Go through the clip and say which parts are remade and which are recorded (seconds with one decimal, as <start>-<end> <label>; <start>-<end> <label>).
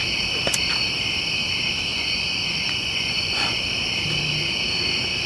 0.0-1.9 recorded; 1.9-3.6 remade; 3.6-5.3 recorded